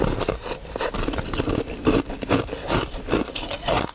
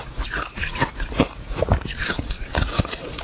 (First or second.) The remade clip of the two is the second